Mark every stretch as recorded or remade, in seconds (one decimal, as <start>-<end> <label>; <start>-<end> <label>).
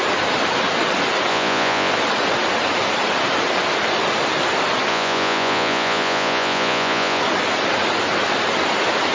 0.0-1.3 recorded; 1.3-1.9 remade; 1.9-4.9 recorded; 4.9-7.2 remade; 7.2-9.1 recorded